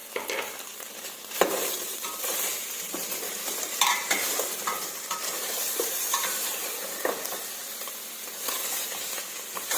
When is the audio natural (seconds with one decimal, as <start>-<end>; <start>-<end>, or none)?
6.6-7.6